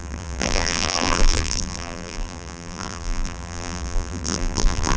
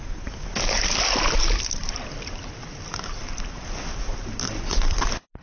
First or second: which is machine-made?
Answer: first